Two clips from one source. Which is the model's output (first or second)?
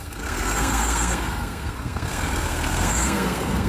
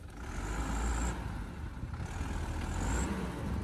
first